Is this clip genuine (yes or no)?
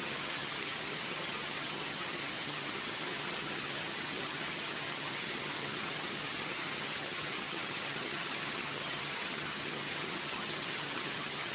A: no